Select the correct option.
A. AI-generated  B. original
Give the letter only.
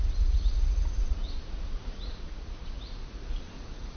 A